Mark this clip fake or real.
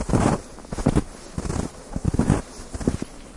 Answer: real